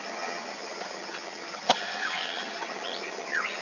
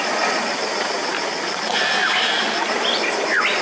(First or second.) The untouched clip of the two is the second